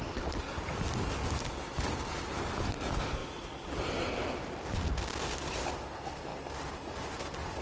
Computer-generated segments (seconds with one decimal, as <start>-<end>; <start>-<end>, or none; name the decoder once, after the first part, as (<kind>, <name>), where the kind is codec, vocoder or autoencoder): none